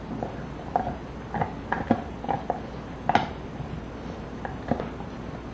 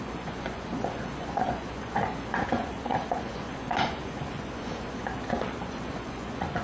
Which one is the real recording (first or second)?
first